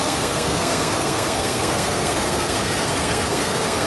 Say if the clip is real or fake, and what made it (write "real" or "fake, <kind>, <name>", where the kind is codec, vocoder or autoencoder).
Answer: fake, codec, SNAC